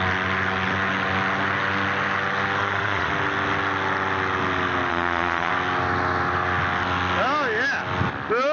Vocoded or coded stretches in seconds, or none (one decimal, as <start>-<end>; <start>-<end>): 2.6-3.1; 4.9-5.5